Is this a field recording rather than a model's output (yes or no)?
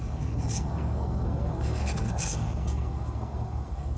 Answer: no